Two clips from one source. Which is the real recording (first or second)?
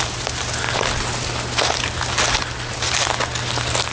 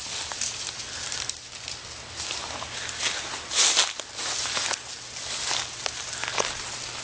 second